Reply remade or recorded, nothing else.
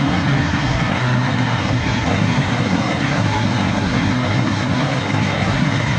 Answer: remade